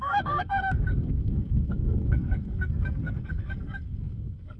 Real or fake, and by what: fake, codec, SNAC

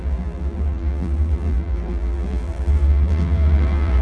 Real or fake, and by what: fake, vocoder, BigVGAN v2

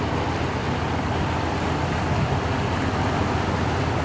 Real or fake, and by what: real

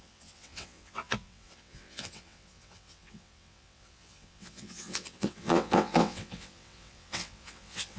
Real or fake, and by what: fake, vocoder, WaveNeXt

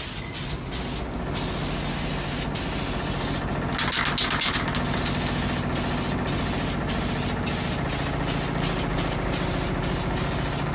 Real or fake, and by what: real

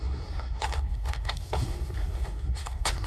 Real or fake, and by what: fake, codec, SNAC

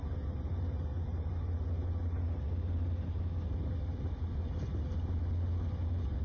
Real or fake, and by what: real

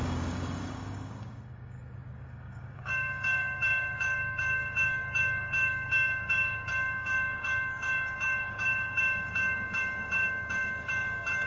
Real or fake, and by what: fake, codec, DAC